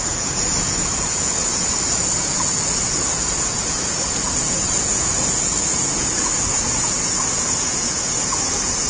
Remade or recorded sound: remade